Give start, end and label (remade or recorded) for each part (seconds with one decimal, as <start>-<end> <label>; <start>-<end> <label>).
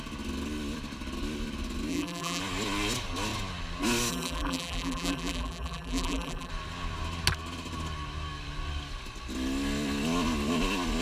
0.0-1.9 recorded; 1.9-2.4 remade; 2.4-4.1 recorded; 4.1-6.5 remade; 6.5-11.0 recorded